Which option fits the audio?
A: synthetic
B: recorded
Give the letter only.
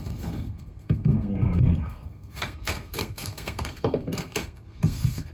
A